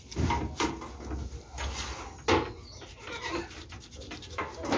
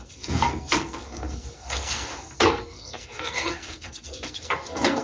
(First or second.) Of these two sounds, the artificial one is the second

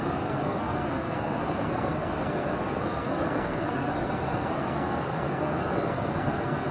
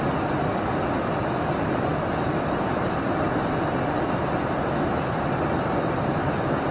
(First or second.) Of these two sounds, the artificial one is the first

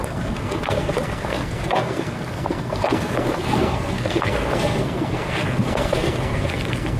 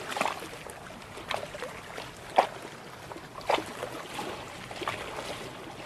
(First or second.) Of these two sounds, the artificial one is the first